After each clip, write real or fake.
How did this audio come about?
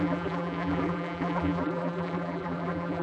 fake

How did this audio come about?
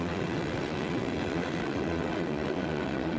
fake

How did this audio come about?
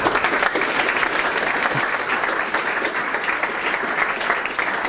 real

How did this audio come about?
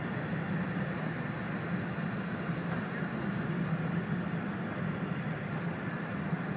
real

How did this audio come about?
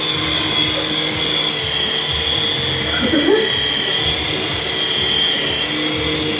real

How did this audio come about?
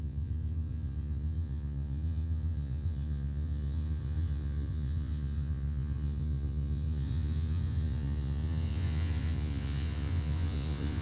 fake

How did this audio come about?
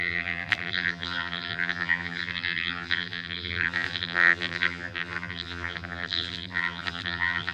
fake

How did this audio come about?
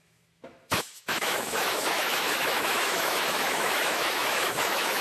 fake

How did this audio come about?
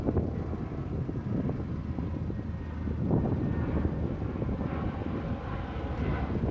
real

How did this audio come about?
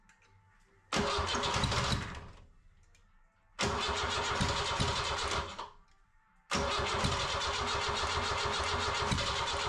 real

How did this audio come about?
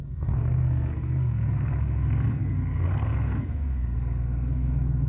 fake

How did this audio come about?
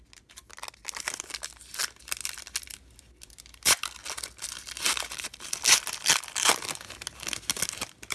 real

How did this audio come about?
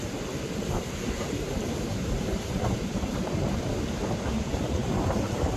fake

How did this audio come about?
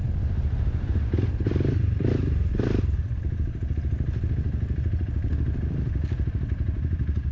fake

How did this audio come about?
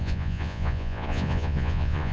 fake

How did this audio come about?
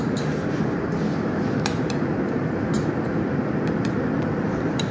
fake